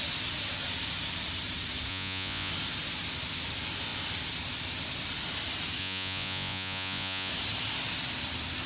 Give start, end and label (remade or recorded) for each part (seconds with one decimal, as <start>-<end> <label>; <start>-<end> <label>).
0.0-1.9 recorded; 1.9-2.5 remade; 2.5-5.8 recorded; 5.8-7.3 remade; 7.3-8.7 recorded